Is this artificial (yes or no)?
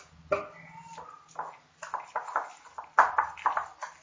no